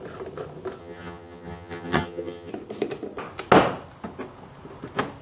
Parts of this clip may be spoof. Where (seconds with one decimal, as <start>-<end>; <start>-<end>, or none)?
0.8-2.5